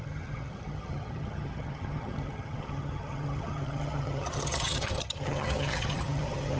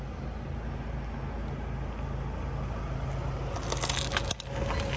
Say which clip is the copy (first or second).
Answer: first